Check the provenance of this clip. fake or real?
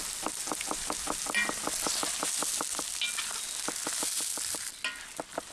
real